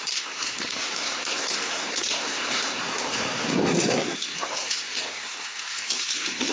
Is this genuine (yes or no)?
no